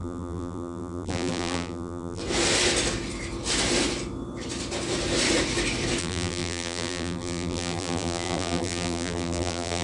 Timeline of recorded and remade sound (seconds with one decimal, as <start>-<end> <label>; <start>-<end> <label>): 0.0-2.2 remade; 2.2-6.0 recorded; 6.0-9.8 remade

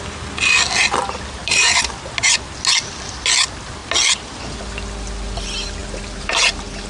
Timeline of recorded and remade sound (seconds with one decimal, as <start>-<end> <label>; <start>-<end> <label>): 0.0-1.4 recorded; 1.4-1.9 remade; 1.9-5.8 recorded; 5.8-6.4 remade; 6.4-6.9 recorded